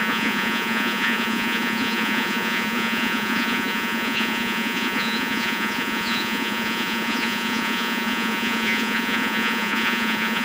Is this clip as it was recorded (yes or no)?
no